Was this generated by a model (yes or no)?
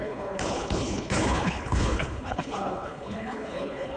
yes